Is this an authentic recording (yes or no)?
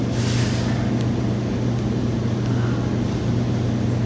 yes